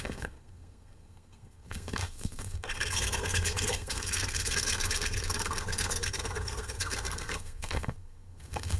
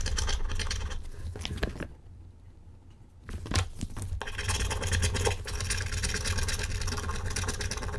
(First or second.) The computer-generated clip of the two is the first